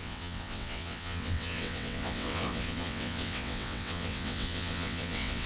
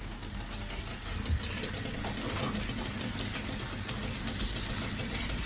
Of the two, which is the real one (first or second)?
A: second